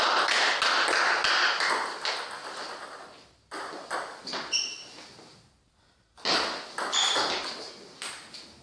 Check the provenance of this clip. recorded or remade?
recorded